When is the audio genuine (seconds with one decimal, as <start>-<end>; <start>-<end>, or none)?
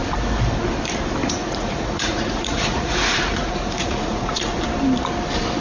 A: 0.0-1.2; 4.6-5.6